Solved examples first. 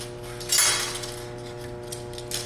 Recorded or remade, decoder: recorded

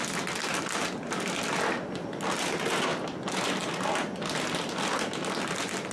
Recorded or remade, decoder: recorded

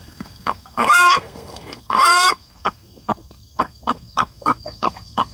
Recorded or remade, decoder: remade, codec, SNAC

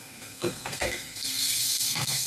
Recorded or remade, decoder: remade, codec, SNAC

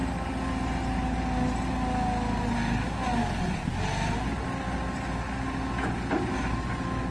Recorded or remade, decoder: recorded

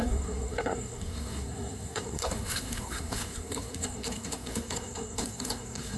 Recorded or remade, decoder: remade, codec, SNAC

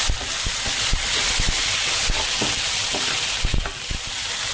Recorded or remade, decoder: recorded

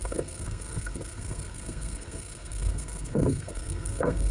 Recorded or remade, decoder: remade, codec, SNAC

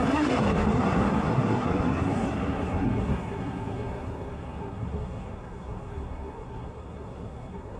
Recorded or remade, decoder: remade, codec, SNAC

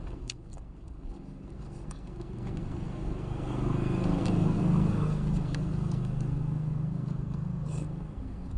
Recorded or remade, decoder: remade, codec, SNAC